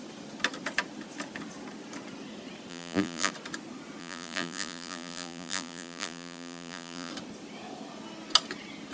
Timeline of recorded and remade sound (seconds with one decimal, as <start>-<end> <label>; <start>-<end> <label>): 0.0-2.7 recorded; 2.7-3.3 remade; 3.3-4.0 recorded; 4.0-7.1 remade; 7.1-8.9 recorded